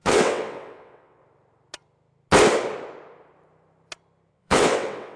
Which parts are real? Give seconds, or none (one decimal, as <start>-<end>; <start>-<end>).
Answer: 1.2-4.3